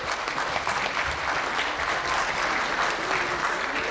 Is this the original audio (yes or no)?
yes